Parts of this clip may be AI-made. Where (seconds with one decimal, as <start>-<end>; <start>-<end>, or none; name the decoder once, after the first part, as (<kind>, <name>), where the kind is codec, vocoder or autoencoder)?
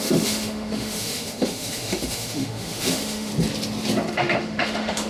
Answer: 0.0-3.3 (autoencoder, DAC-VAE); 4.1-5.1